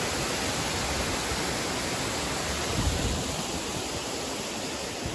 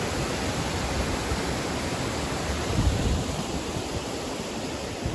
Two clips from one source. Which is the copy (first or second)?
second